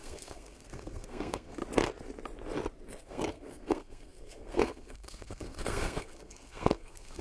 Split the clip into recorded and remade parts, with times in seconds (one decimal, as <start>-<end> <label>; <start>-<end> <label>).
0.0-1.6 remade; 1.6-3.0 recorded; 3.0-7.2 remade